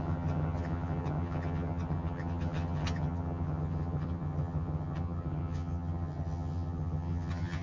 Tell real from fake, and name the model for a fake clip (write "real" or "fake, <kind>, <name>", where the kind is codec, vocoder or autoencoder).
fake, vocoder, HiFi-GAN